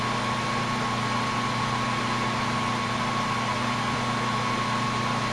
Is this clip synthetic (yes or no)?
no